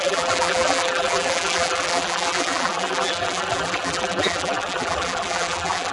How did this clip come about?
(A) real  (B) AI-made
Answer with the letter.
B